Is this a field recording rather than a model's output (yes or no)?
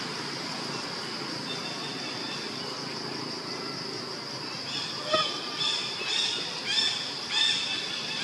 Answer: yes